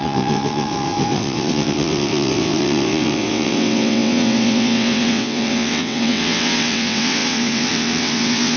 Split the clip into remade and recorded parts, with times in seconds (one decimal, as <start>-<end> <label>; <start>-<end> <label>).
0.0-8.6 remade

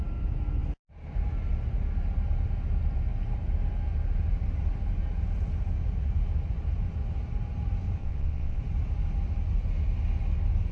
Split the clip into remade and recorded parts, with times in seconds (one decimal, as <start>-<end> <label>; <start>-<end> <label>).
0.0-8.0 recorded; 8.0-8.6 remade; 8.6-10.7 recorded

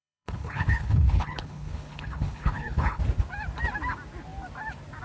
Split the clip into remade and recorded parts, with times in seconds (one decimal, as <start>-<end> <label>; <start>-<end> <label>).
0.0-3.0 remade; 3.0-5.0 recorded

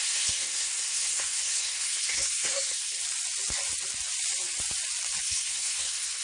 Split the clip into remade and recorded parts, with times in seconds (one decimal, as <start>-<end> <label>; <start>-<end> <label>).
0.0-3.0 remade; 3.0-5.2 recorded; 5.2-6.2 remade

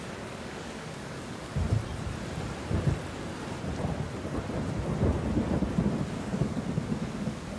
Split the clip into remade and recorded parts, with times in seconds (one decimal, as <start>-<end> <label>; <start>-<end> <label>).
0.0-1.5 remade; 1.5-6.0 recorded; 6.0-7.6 remade

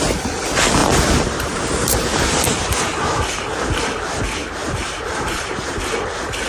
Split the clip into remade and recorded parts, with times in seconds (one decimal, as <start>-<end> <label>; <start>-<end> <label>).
0.0-0.8 recorded; 0.8-2.8 remade; 2.8-4.6 recorded; 4.6-5.8 remade; 5.8-6.5 recorded

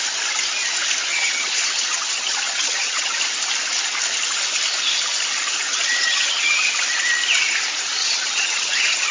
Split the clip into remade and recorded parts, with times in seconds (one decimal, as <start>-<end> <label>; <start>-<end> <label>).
0.0-1.1 recorded; 1.1-3.2 remade; 3.2-5.7 recorded; 5.7-6.6 remade; 6.6-8.0 recorded; 8.0-9.1 remade

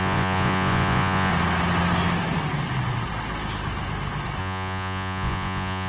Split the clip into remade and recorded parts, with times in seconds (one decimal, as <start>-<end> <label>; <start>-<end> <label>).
0.0-1.3 remade; 1.3-4.4 recorded; 4.4-5.9 remade